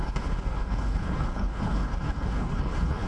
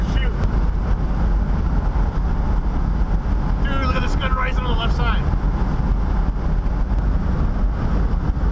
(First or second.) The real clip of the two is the second